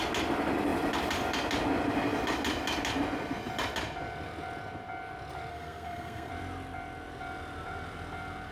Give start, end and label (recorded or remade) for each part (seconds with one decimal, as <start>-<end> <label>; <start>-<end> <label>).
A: 0.0-5.5 recorded; 5.5-6.3 remade; 6.3-8.5 recorded